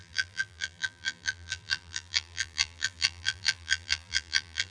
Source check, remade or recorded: remade